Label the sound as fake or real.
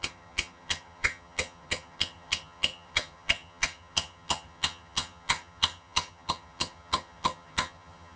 fake